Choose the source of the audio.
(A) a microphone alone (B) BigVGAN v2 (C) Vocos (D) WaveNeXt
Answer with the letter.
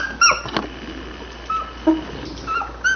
A